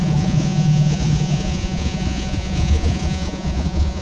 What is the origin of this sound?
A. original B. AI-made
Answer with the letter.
B